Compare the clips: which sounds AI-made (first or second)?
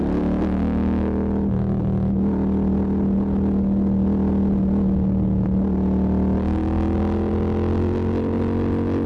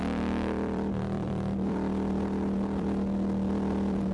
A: second